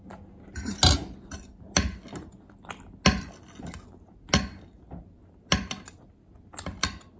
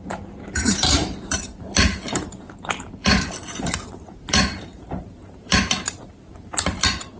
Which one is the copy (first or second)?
second